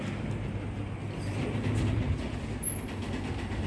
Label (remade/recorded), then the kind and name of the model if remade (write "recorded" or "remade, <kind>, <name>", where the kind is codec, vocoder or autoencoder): recorded